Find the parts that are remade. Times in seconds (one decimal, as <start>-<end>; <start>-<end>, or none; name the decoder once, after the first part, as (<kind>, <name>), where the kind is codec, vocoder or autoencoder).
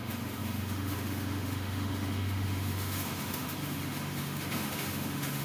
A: 0.0-5.4 (autoencoder, DAC-VAE)